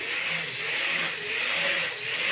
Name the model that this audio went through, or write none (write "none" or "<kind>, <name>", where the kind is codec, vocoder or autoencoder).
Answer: none